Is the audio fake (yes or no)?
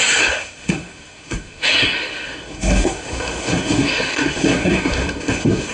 yes